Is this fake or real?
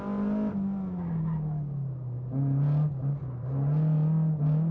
real